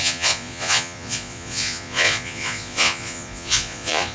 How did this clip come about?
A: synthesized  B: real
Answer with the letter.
A